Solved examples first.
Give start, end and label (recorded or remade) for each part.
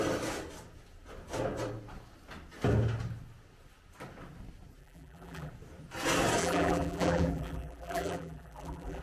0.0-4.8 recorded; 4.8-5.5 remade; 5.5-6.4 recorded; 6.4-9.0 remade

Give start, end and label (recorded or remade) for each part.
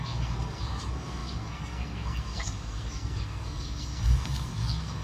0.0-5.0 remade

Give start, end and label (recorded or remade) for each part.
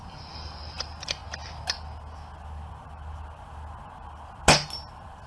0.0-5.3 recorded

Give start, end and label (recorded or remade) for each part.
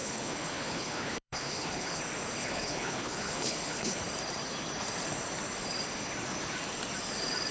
0.0-2.0 remade; 2.0-2.4 recorded; 2.4-4.0 remade; 4.0-7.5 recorded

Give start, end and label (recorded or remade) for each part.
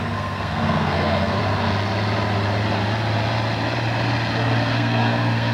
0.0-1.4 remade; 1.4-4.7 recorded; 4.7-5.5 remade